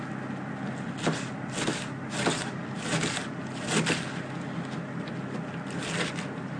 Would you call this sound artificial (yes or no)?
no